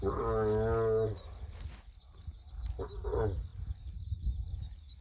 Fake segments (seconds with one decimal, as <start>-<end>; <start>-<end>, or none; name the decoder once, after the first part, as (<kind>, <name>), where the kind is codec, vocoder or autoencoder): none